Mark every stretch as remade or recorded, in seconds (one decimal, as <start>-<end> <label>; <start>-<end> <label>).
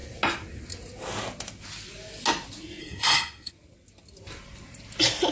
0.0-2.8 recorded; 2.8-3.5 remade; 3.5-5.3 recorded